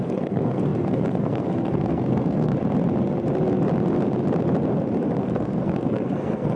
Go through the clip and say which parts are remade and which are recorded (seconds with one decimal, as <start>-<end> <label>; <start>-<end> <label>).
0.0-2.5 remade; 2.5-5.2 recorded; 5.2-6.6 remade